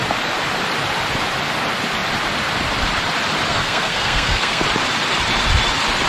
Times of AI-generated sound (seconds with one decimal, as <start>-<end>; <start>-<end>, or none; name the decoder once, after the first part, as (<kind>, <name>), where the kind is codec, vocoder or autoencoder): 3.5-4.6 (codec, SNAC)

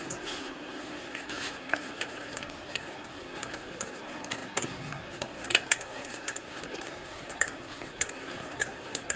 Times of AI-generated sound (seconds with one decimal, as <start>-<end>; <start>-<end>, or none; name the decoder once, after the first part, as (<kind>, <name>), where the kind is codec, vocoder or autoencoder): 0.0-9.2 (codec, SNAC)

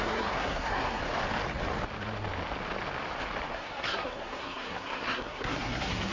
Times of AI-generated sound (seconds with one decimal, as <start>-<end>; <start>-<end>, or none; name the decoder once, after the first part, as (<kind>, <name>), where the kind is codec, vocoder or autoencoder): 0.0-1.0 (codec, SNAC); 3.5-6.1

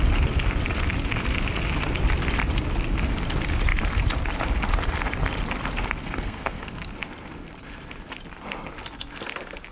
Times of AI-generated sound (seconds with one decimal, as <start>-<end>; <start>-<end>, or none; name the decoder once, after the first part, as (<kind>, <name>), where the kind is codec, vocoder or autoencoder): 6.0-6.7 (codec, SNAC)